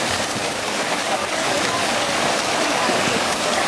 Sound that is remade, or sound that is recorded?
remade